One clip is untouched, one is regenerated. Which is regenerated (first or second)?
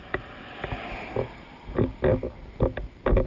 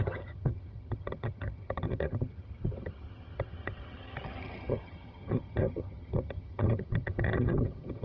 second